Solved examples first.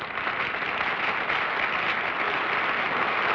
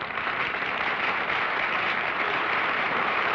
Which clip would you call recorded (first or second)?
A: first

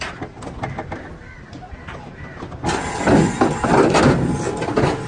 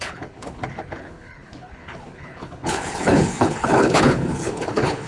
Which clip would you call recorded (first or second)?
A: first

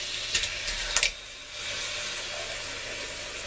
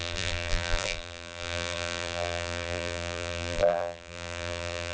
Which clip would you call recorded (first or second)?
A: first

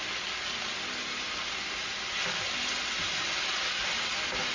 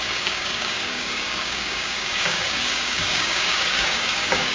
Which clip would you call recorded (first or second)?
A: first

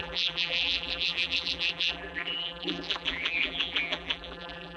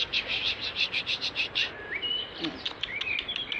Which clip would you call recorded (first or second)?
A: second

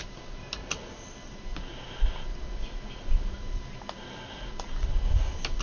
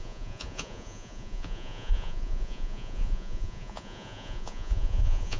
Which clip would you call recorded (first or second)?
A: first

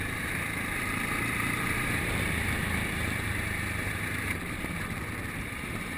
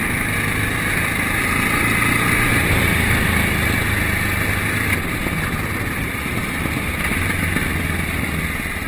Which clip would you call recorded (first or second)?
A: second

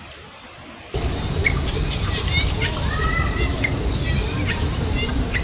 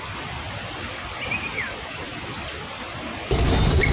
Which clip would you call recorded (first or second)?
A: second